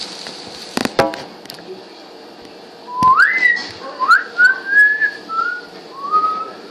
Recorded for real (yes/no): yes